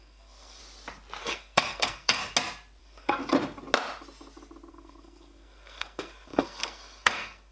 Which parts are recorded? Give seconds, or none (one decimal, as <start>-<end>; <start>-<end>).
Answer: 0.6-1.2; 2.2-2.8; 3.2-4.7